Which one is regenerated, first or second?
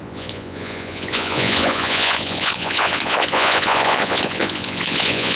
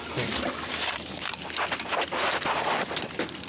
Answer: first